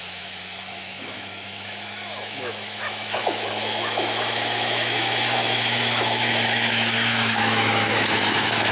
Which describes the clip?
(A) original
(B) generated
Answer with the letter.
B